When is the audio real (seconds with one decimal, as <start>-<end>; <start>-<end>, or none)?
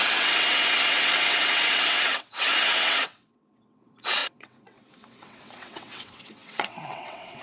none